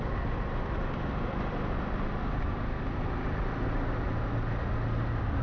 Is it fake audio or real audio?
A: real